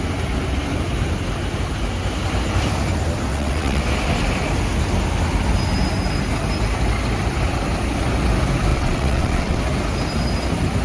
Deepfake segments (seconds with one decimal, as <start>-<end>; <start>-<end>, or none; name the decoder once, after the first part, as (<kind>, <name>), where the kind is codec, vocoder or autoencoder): 3.3-3.8 (vocoder, WaveNeXt); 8.7-9.6